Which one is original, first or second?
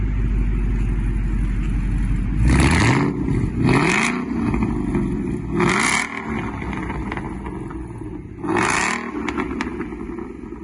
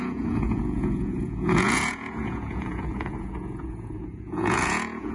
first